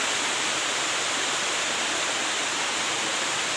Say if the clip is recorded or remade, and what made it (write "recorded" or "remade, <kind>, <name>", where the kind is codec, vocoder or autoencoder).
remade, vocoder, BigVGAN v2